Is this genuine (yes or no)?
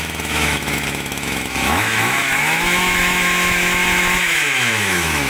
no